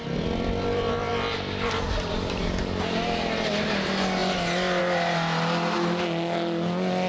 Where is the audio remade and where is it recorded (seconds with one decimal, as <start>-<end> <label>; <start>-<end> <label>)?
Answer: 0.0-7.1 recorded